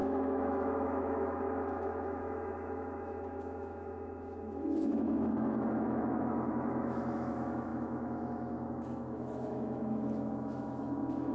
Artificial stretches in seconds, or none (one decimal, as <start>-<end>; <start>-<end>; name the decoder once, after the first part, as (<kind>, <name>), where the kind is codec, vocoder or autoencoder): 0.0-11.3 (autoencoder, DAC-VAE)